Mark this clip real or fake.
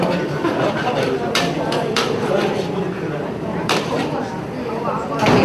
fake